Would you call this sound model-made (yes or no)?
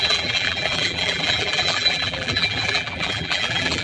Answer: yes